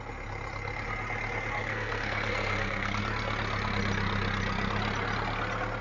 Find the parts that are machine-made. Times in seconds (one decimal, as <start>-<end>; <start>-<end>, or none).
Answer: 1.6-3.0